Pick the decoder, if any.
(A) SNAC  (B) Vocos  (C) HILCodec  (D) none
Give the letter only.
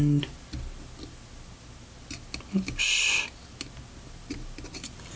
D